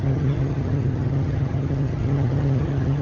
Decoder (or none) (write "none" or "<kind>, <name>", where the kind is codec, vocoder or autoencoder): vocoder, HiFi-GAN